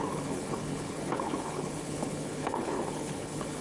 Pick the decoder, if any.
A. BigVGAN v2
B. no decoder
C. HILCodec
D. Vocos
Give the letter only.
C